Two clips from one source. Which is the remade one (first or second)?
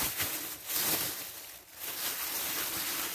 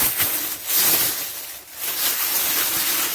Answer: first